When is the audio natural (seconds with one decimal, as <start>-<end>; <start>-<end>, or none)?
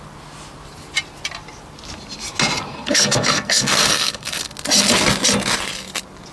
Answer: 0.0-2.7; 4.5-6.3